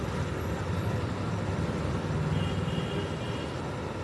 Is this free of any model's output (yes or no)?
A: yes